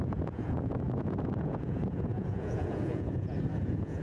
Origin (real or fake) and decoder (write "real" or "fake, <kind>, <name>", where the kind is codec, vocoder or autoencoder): fake, vocoder, Vocos